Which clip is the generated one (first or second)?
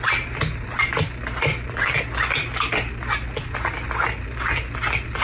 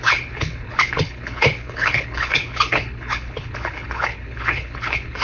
second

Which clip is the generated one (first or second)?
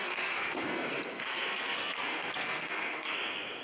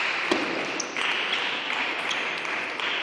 first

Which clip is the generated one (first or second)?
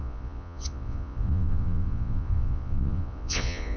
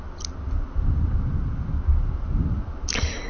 first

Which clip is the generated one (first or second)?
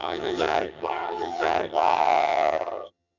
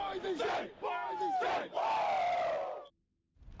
first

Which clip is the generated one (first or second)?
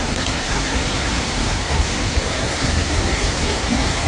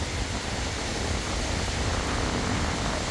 first